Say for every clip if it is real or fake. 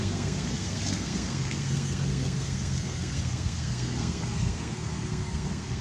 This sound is fake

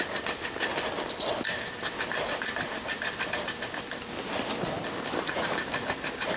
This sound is real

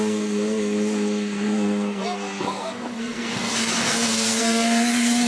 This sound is fake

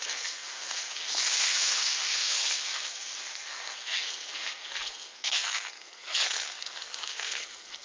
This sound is fake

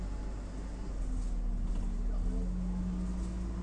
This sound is real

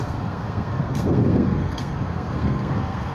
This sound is fake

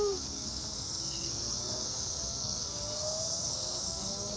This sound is fake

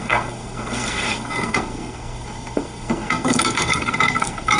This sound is fake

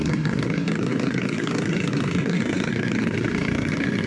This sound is fake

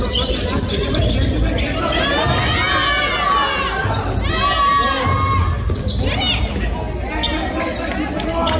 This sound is real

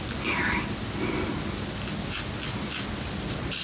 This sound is real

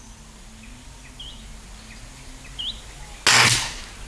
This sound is real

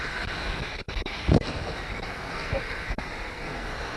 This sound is fake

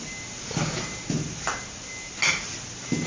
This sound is real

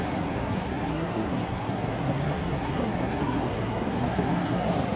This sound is fake